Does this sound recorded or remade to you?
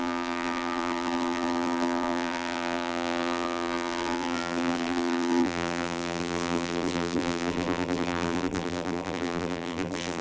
remade